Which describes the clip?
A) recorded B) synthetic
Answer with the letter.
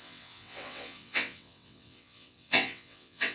B